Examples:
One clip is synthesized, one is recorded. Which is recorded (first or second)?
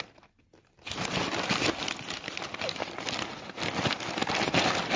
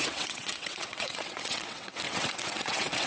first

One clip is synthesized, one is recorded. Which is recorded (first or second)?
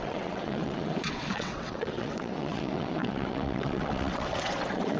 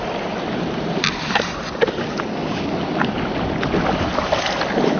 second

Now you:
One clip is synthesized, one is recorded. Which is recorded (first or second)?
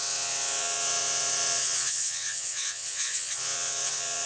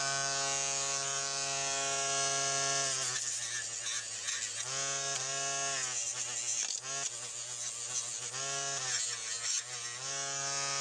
second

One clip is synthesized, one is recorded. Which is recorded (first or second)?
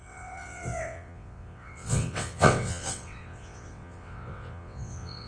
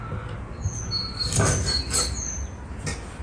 second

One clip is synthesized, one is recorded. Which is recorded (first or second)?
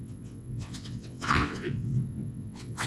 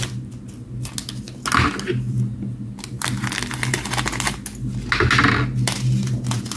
second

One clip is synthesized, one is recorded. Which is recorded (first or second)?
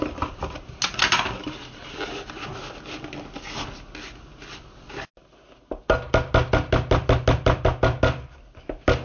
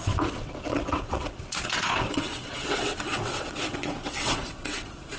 first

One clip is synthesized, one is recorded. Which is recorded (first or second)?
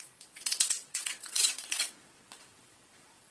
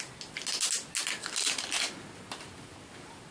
second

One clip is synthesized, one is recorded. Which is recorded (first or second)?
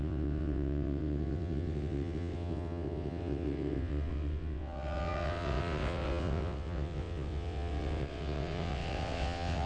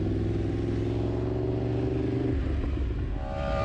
second